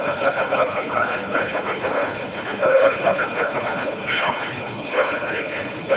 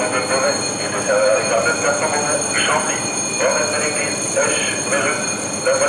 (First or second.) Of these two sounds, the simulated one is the first